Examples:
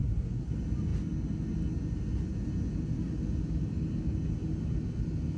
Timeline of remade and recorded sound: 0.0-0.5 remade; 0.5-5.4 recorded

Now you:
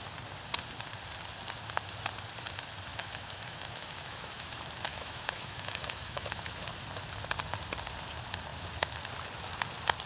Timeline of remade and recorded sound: 0.0-2.9 recorded; 2.9-4.5 remade; 4.5-4.9 recorded; 4.9-6.6 remade; 6.6-10.1 recorded